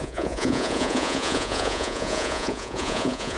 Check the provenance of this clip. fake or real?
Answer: fake